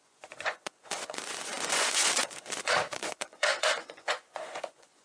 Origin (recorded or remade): remade